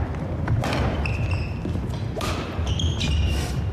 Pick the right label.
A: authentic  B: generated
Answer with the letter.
A